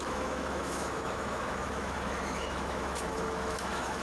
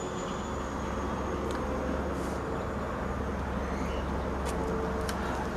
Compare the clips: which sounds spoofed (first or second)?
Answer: first